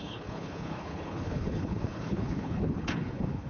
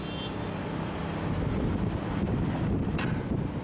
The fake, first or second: first